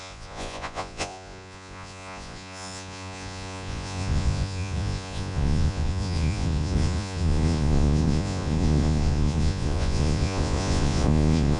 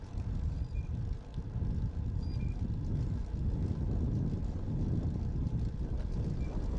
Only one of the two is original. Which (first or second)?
second